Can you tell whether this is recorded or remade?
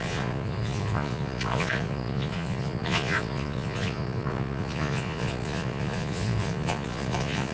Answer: remade